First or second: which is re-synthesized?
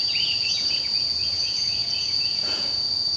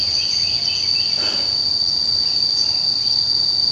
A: first